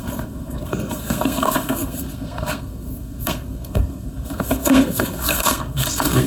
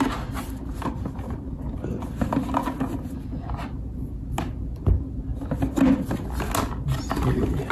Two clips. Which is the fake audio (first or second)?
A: first